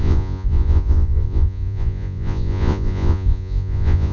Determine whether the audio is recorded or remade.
remade